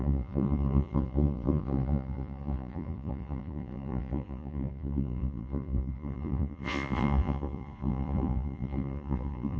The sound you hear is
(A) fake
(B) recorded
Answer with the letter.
A